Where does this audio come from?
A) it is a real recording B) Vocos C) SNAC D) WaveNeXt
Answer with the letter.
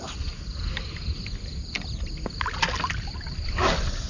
A